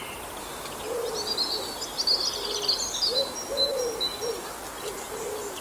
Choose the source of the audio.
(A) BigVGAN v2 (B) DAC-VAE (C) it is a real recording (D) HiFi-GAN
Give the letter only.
C